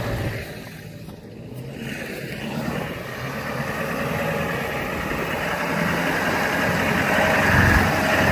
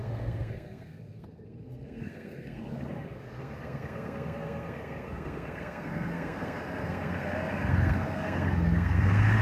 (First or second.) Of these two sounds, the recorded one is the first